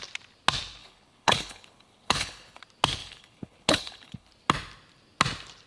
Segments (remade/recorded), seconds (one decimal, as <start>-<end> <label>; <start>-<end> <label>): 0.0-0.8 recorded; 0.8-2.6 remade; 2.6-3.0 recorded; 3.0-4.3 remade; 4.3-5.7 recorded